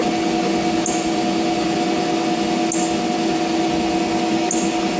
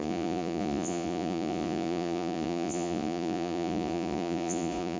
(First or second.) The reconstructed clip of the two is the second